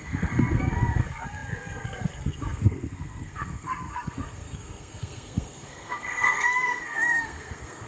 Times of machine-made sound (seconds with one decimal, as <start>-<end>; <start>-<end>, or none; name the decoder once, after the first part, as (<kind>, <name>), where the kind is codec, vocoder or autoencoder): 0.0-7.9 (codec, SNAC)